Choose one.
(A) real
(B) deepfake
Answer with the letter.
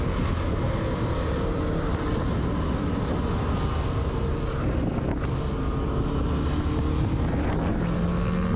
A